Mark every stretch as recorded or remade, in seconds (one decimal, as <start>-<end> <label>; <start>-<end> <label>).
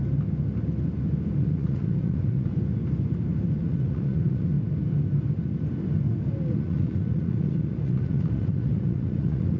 0.0-1.4 recorded; 1.4-2.5 remade; 2.5-3.6 recorded; 3.6-4.5 remade; 4.5-6.5 recorded; 6.5-9.6 remade